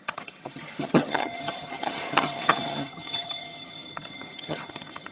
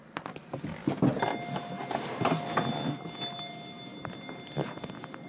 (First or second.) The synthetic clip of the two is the first